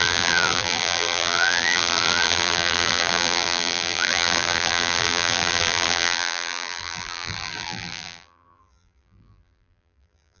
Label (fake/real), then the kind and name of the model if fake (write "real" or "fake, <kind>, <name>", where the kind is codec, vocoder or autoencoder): fake, vocoder, BigVGAN v2